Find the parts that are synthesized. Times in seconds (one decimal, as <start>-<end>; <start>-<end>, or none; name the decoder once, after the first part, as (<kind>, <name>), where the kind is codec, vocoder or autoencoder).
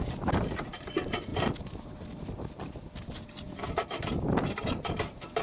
0.0-5.4 (vocoder, BigVGAN v2)